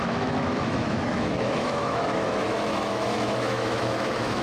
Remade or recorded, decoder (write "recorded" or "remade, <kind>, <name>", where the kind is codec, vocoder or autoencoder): remade, autoencoder, DAC-VAE